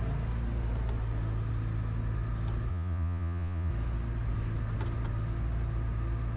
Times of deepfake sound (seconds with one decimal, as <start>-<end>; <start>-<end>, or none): 2.7-3.7